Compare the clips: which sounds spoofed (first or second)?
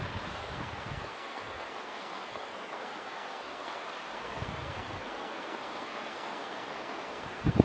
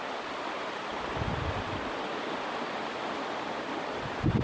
first